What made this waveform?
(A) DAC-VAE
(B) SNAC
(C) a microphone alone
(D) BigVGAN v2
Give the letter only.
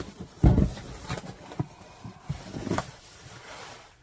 C